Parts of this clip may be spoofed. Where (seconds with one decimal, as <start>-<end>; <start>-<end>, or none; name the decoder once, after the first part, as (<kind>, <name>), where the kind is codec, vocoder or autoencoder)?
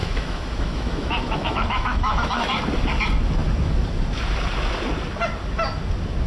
0.0-2.6 (autoencoder, DAC-VAE)